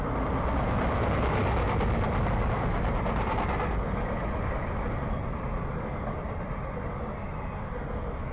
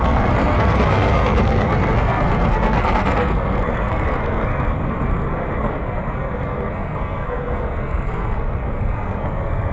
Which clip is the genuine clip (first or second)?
first